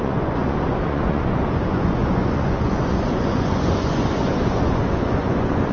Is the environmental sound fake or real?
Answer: fake